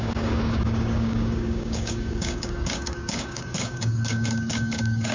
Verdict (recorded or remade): remade